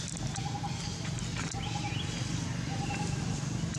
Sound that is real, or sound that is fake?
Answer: real